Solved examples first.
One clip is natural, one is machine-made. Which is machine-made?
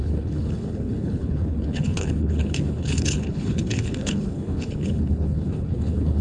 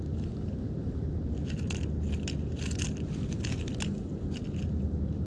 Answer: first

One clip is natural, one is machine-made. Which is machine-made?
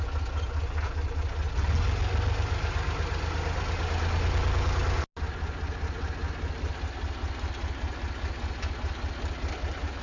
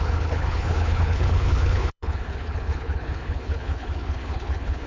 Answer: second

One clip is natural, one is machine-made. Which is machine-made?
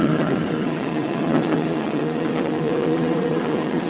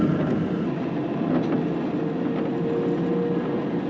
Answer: first